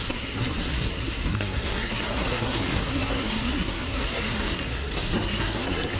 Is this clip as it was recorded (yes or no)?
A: no